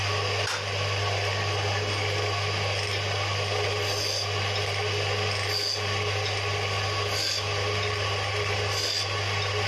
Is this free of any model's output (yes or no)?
yes